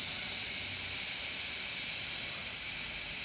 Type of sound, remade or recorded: recorded